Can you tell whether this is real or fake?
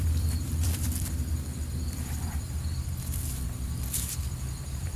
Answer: fake